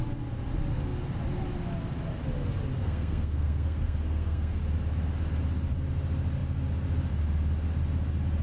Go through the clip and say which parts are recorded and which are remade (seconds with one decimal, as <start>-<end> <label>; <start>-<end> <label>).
0.0-2.8 recorded; 2.8-4.6 remade; 4.6-8.4 recorded